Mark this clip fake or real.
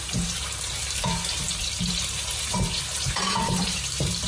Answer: fake